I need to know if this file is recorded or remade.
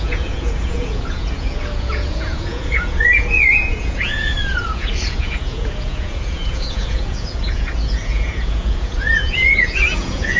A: remade